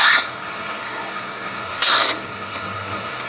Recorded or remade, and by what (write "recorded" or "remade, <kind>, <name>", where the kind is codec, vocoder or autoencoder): remade, codec, SNAC